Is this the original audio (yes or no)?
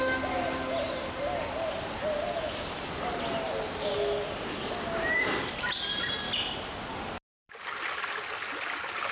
yes